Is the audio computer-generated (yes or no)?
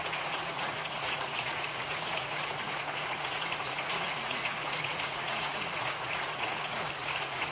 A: yes